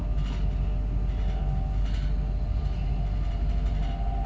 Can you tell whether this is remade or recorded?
recorded